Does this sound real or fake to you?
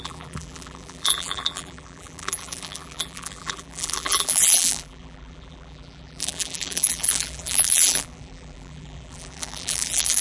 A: fake